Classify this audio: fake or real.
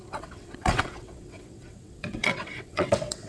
fake